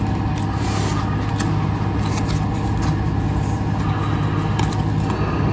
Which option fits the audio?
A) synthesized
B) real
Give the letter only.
B